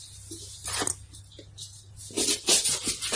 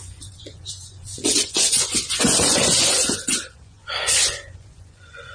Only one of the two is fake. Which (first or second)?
second